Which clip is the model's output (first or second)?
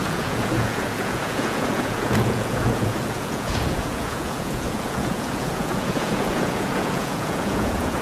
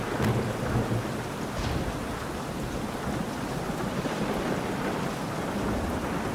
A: first